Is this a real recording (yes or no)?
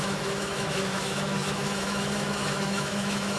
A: no